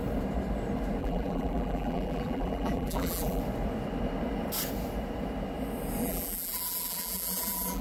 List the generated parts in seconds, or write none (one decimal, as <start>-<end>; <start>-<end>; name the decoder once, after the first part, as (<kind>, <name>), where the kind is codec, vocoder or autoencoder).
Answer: 1.0-3.4 (vocoder, BigVGAN v2); 6.0-7.8